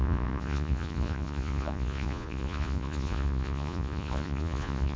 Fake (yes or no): yes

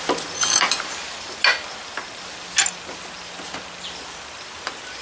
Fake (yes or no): no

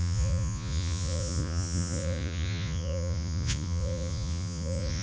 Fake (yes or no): yes